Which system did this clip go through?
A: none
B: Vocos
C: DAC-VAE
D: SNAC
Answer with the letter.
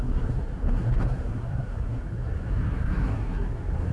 D